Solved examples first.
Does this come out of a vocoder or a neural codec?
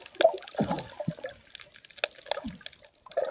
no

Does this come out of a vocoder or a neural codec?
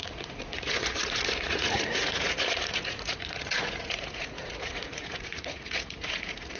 yes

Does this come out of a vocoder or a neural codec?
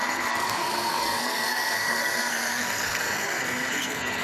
yes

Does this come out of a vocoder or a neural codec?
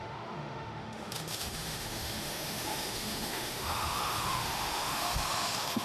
yes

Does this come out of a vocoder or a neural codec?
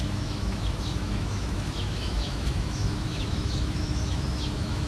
yes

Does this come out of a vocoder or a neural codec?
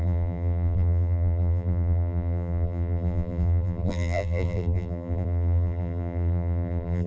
yes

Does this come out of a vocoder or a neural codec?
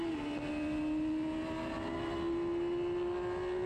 no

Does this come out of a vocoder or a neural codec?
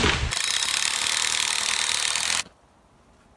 no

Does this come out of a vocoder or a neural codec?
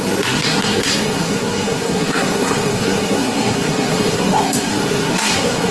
yes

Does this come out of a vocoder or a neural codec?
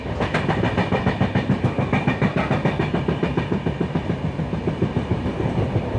no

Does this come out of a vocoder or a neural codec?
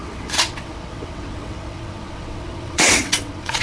yes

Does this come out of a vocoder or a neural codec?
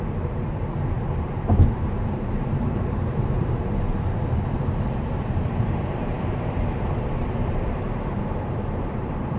yes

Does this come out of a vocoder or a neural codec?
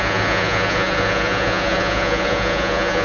yes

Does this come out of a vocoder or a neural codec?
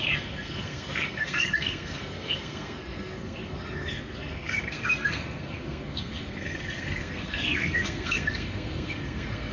yes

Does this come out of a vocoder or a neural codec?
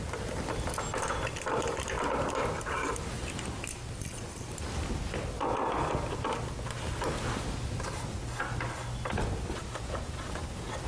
no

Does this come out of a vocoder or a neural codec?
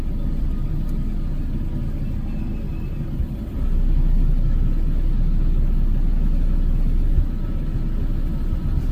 no